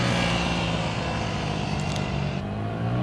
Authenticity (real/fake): real